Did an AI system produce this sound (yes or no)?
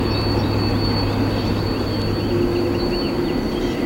no